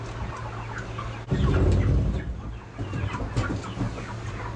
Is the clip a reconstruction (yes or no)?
no